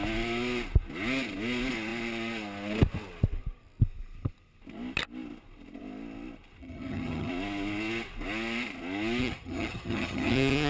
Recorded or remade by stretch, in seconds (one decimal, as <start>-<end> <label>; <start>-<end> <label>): 0.0-6.6 recorded; 6.6-7.3 remade; 7.3-9.2 recorded; 9.2-10.7 remade